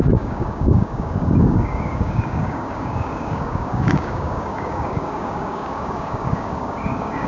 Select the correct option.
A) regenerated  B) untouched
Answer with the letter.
A